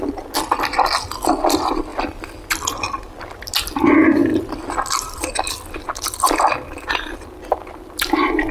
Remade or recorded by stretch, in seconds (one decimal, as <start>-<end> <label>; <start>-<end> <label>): 0.0-8.5 recorded